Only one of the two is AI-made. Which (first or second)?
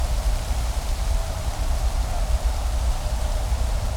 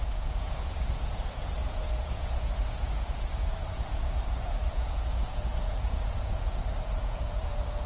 second